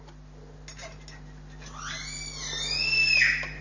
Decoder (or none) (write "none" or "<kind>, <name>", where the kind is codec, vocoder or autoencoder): none